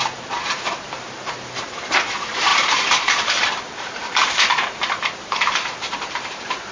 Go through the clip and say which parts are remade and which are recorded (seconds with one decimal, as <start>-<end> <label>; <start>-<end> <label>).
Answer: 0.0-6.7 remade